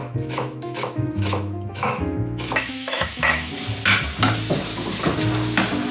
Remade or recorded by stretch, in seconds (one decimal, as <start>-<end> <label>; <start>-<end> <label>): 0.0-3.5 remade; 3.5-5.9 recorded